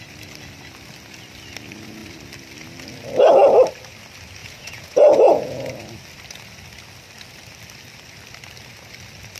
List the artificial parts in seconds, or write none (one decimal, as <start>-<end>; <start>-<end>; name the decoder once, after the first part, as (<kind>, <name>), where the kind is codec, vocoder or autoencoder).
4.4-5.7 (vocoder, Vocos)